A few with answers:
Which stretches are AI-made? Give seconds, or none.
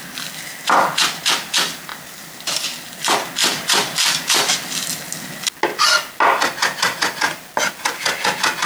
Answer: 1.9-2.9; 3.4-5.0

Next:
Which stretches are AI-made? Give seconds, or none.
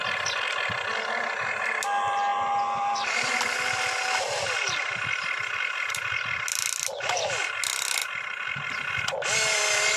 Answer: 2.3-3.7; 4.6-6.2; 8.0-8.7